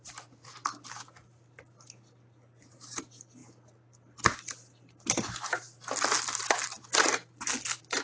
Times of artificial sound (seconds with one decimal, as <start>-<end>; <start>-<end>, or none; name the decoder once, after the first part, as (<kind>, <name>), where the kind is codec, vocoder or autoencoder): none